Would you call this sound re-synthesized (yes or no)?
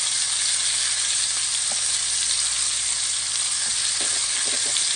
no